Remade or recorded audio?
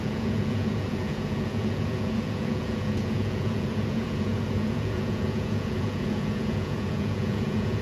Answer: remade